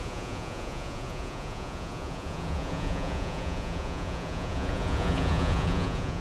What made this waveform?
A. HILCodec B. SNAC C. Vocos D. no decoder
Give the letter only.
C